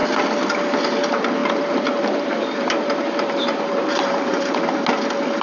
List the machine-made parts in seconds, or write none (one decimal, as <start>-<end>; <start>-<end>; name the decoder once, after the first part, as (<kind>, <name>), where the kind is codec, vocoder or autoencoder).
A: 1.4-4.6 (vocoder, BigVGAN v2)